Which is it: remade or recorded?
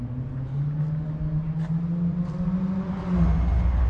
recorded